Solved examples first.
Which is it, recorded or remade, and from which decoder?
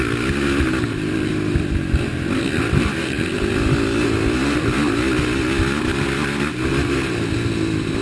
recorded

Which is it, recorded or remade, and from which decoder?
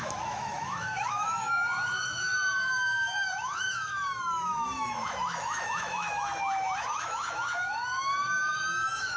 remade, autoencoder, DAC-VAE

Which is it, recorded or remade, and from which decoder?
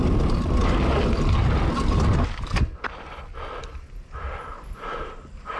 recorded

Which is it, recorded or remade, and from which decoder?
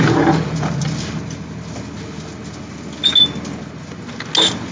recorded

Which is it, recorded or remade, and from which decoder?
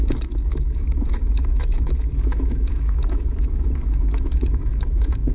remade, autoencoder, DAC-VAE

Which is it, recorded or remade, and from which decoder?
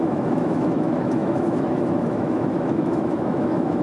remade, autoencoder, DAC-VAE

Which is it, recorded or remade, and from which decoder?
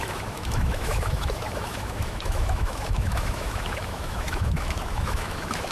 remade, autoencoder, DAC-VAE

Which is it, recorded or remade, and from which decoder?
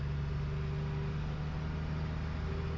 recorded